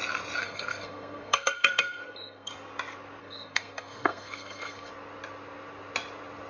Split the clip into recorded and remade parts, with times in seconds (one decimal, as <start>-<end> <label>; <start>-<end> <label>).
0.0-0.4 recorded; 0.4-2.5 remade; 2.5-3.2 recorded; 3.2-4.9 remade; 4.9-6.5 recorded